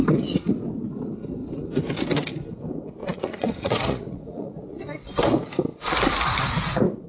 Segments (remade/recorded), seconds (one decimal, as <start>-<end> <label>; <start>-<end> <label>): 0.0-3.0 recorded; 3.0-4.8 remade; 4.8-7.1 recorded